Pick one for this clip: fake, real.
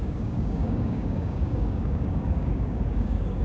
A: fake